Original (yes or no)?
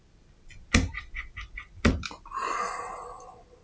yes